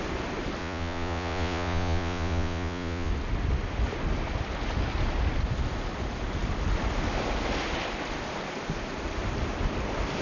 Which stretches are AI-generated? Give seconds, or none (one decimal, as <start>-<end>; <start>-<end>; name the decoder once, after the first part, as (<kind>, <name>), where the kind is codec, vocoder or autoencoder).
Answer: 0.6-3.1 (vocoder, Vocos)